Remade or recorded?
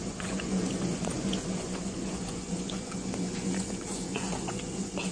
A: remade